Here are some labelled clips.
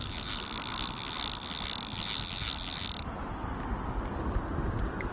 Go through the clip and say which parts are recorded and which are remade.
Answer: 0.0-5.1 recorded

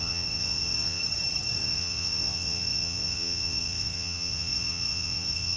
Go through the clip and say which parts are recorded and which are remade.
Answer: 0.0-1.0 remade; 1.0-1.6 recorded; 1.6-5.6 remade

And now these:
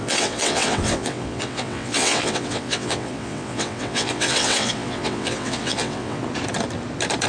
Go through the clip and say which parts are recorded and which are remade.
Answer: 0.0-6.2 remade; 6.2-7.3 recorded